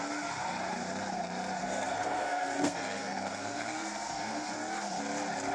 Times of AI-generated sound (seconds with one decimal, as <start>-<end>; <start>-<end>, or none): 1.6-4.5